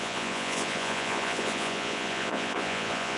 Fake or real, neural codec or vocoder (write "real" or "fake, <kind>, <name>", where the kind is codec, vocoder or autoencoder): fake, vocoder, Vocos